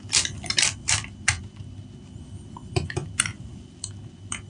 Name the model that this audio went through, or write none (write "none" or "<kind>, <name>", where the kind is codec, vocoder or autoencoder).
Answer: vocoder, BigVGAN v2